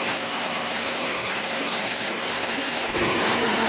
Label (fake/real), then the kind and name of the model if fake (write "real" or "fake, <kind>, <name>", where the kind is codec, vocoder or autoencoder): fake, codec, SNAC